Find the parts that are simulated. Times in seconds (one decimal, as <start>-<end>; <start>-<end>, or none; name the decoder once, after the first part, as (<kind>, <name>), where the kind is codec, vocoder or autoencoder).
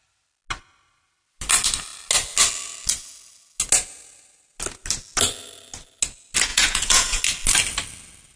6.5-7.2 (vocoder, Vocos)